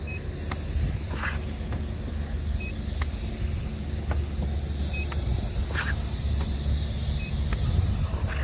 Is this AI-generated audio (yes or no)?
no